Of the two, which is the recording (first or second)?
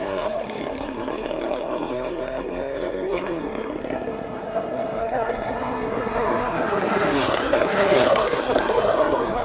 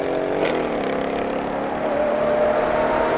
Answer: second